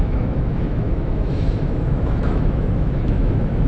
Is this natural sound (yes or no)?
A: no